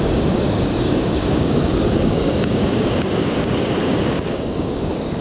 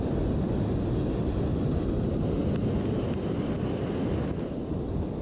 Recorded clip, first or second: second